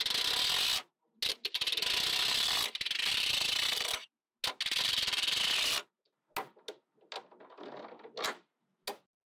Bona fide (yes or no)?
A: yes